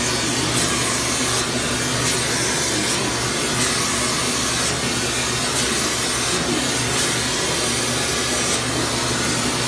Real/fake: real